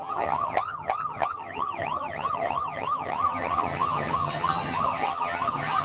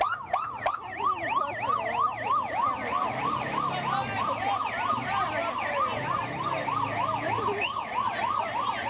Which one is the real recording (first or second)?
second